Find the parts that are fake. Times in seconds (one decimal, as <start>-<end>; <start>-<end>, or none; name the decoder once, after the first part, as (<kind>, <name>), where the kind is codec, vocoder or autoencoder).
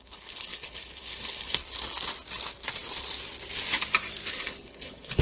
0.0-1.6 (codec, HILCodec); 4.3-5.2